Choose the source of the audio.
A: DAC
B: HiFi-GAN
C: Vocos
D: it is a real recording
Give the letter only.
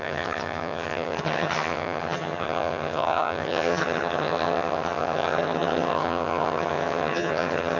B